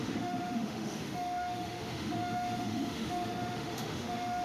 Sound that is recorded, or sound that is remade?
remade